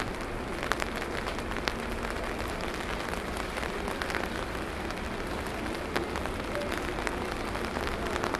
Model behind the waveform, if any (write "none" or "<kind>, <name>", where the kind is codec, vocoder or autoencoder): none